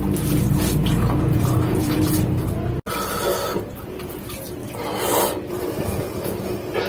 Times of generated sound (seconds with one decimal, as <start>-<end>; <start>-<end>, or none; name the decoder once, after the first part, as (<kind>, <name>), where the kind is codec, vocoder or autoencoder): 0.8-2.0 (vocoder, Vocos)